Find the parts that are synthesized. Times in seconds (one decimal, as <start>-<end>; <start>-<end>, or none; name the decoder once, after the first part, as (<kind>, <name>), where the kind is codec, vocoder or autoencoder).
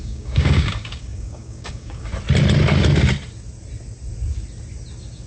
0.0-2.1 (codec, DAC)